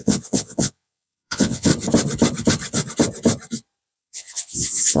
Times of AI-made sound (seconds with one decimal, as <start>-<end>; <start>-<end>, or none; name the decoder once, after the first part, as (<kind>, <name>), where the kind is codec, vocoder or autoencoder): 0.0-1.7 (vocoder, WaveNeXt); 4.0-5.0